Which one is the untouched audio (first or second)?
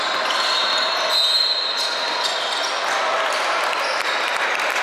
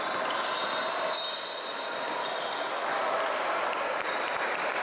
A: first